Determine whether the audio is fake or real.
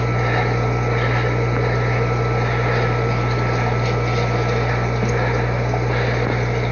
real